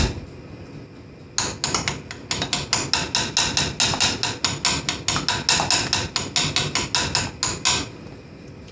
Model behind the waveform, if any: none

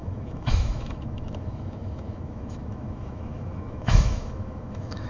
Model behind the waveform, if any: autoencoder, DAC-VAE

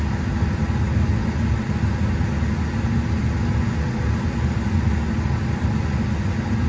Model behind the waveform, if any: none